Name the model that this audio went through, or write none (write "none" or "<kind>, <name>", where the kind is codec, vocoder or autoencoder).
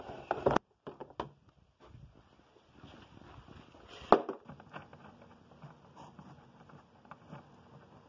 none